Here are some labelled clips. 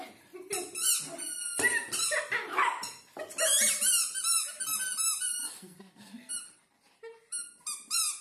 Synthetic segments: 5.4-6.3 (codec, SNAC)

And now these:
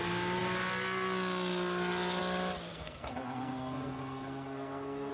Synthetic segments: 2.7-5.1 (codec, SNAC)

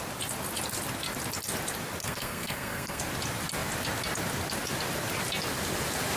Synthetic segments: 2.0-3.0 (codec, SNAC)

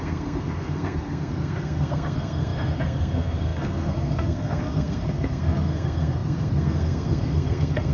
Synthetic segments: 0.0-7.9 (codec, SNAC)